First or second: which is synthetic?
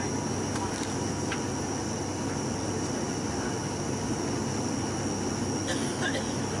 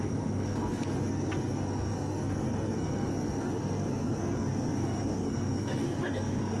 second